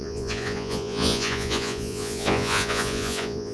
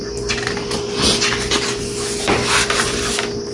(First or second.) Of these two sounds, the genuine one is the second